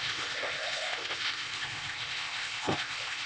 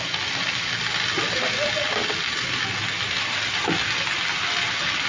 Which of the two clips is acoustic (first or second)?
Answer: second